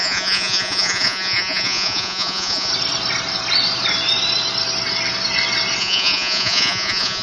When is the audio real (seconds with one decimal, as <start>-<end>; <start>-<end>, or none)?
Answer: 2.7-5.8

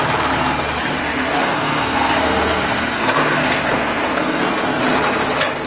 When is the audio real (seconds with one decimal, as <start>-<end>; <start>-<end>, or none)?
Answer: 0.0-1.0; 4.4-5.7

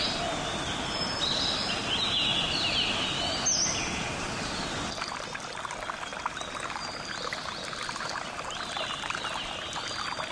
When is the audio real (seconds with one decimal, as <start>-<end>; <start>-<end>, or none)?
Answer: 0.0-10.3

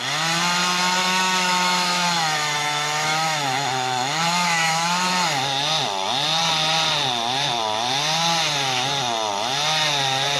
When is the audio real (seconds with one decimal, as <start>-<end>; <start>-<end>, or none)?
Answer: 0.0-1.0; 5.1-10.4

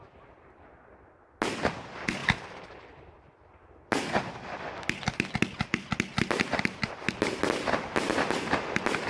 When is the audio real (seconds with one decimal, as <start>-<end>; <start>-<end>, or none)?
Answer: 0.0-9.1

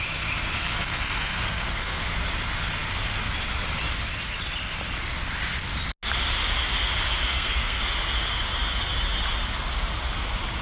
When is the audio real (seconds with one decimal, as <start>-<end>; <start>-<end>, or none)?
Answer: 0.0-0.6; 2.0-7.3; 7.8-10.6

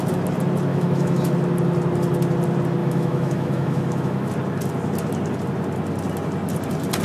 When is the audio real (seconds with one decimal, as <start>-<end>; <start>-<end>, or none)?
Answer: 0.0-0.7; 1.3-2.8; 4.3-7.0

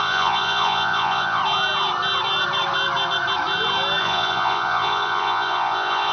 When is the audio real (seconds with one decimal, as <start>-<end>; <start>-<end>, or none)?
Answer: 1.4-4.0